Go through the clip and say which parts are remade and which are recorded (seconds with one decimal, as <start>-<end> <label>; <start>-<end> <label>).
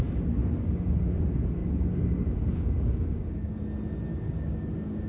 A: 0.0-0.4 recorded; 0.4-1.2 remade; 1.2-1.6 recorded; 1.6-3.6 remade; 3.6-4.1 recorded; 4.1-5.1 remade